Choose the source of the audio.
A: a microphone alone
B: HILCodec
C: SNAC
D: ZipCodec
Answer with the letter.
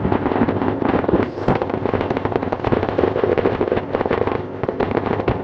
D